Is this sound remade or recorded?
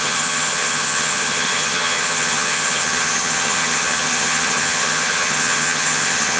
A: remade